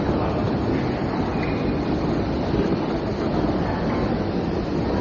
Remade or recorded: recorded